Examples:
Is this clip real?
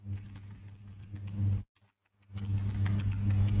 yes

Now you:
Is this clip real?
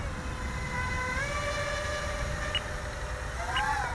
yes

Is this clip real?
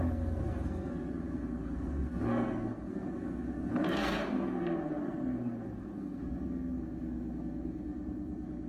no